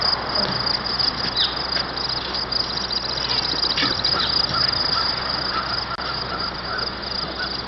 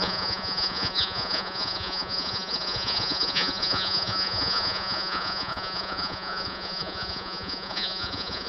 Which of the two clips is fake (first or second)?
second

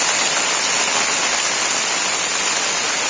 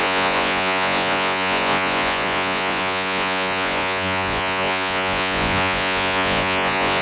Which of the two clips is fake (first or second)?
second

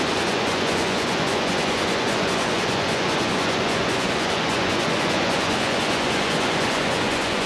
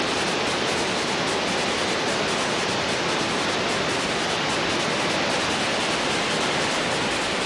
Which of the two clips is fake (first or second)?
first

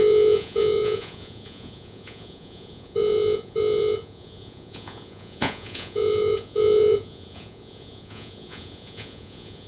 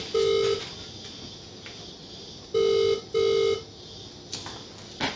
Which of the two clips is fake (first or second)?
first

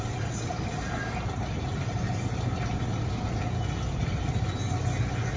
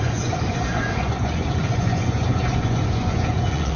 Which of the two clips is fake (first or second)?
second